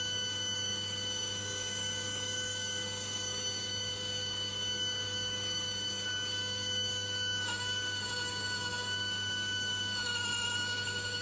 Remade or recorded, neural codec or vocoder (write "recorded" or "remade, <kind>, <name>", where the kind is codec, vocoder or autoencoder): remade, codec, DAC